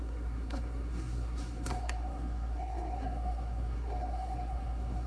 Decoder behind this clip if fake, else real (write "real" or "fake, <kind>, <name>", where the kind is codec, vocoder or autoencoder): fake, codec, SNAC